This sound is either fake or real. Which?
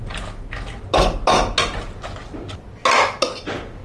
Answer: real